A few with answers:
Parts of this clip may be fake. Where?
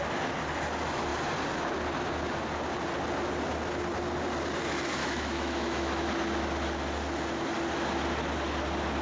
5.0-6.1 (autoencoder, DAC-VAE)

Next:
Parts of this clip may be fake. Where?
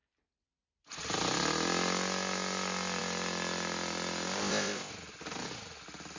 4.4-4.9 (codec, ZipCodec)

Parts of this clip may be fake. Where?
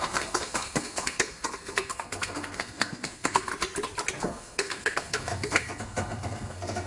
0.0-3.5 (codec, SNAC); 4.2-6.9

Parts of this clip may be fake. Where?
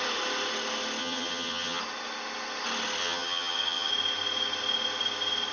1.0-1.8 (vocoder, HiFi-GAN); 3.0-3.9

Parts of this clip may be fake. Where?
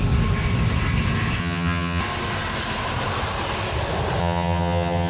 1.4-2.0 (vocoder, HiFi-GAN); 4.2-5.1